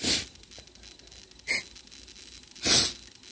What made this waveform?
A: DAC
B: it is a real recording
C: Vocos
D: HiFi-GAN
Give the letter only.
B